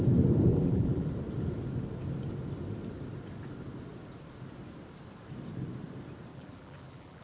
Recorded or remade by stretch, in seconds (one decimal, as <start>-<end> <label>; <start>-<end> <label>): 0.0-0.5 recorded; 0.5-1.1 remade; 1.1-6.3 recorded; 6.3-7.2 remade